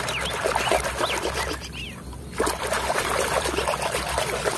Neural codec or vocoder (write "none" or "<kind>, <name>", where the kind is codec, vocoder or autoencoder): none